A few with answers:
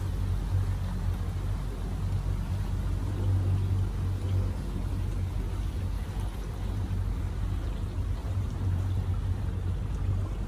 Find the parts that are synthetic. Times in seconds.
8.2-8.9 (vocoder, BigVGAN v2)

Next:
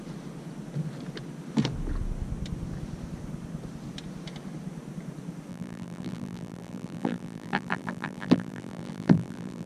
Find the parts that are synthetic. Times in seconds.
5.5-9.7 (vocoder, BigVGAN v2)

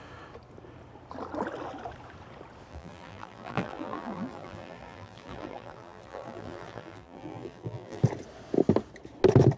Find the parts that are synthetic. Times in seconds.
2.7-8.0 (vocoder, BigVGAN v2)

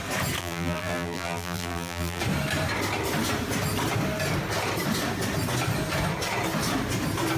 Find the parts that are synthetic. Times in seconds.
0.4-2.2 (vocoder, BigVGAN v2)

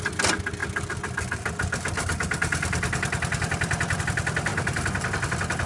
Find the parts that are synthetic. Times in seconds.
none